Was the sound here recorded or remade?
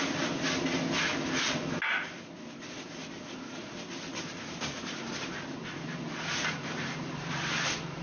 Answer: recorded